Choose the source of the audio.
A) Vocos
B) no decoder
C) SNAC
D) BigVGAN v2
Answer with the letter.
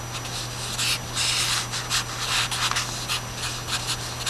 B